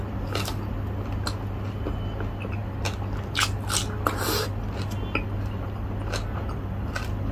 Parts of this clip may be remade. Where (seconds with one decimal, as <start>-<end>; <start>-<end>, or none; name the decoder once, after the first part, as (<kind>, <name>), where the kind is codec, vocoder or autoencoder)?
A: none